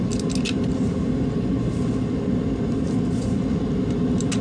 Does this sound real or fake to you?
real